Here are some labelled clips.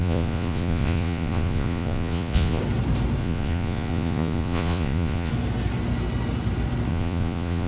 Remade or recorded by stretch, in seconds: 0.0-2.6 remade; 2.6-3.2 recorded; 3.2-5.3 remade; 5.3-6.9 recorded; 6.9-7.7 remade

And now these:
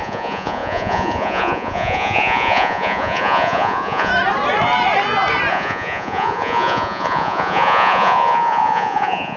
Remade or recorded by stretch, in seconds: 0.0-4.1 remade; 4.1-5.5 recorded; 5.5-9.4 remade

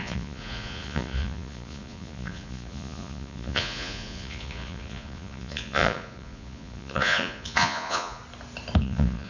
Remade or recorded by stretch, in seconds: 0.0-8.2 remade; 8.2-8.8 recorded; 8.8-9.3 remade

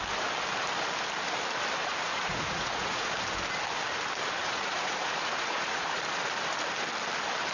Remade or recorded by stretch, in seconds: 0.0-1.8 recorded; 1.8-3.1 remade; 3.1-4.4 recorded; 4.4-6.0 remade; 6.0-7.5 recorded

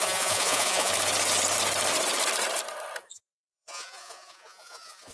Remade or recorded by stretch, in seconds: 0.0-0.9 remade; 0.9-3.0 recorded; 3.0-5.1 remade

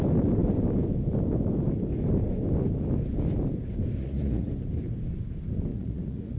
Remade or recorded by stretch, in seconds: 0.0-4.0 recorded; 4.0-4.5 remade; 4.5-5.7 recorded; 5.7-6.4 remade